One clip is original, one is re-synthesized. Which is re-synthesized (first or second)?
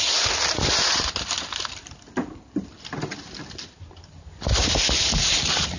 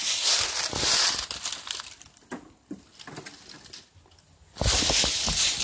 first